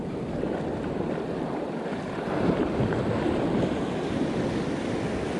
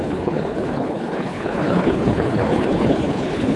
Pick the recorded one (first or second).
first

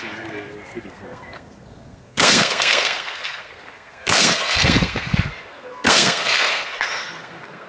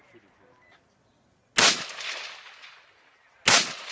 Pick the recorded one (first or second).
second